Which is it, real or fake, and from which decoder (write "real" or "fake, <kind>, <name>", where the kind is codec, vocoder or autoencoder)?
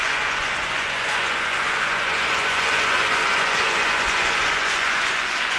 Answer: fake, vocoder, Vocos